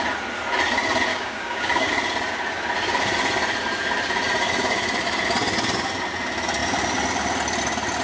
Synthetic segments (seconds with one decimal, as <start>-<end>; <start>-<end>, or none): 1.1-1.9